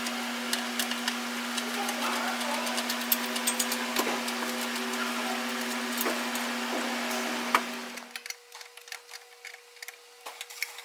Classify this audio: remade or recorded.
recorded